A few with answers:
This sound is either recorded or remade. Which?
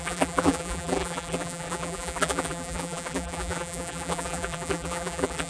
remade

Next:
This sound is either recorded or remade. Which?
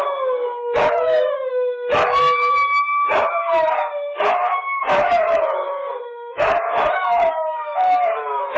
remade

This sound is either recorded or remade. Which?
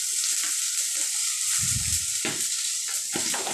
remade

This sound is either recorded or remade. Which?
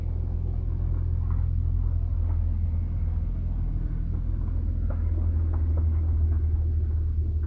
recorded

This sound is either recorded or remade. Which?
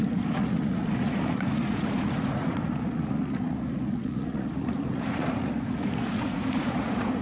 remade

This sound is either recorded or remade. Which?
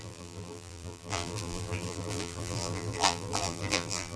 remade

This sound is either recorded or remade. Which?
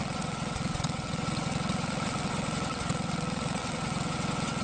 remade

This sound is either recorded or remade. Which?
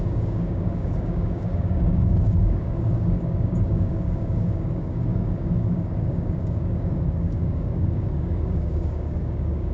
remade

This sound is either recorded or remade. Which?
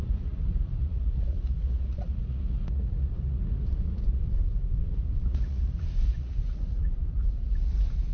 remade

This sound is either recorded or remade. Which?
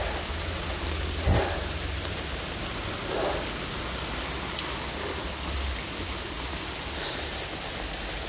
recorded